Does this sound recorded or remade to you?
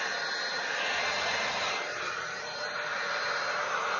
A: recorded